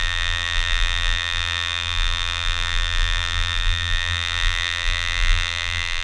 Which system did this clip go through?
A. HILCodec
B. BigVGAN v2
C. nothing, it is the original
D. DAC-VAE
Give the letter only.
B